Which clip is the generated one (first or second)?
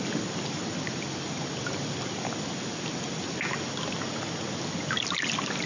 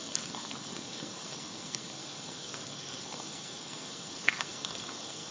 second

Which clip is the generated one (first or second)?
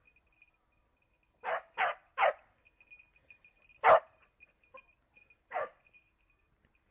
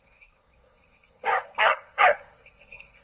second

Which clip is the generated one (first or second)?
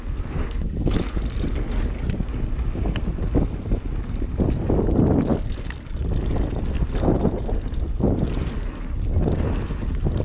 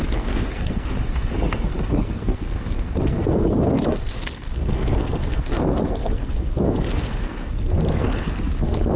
second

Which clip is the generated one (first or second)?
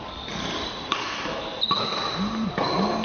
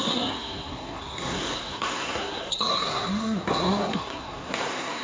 second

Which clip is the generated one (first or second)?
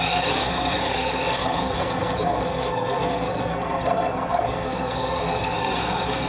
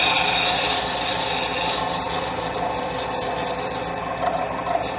first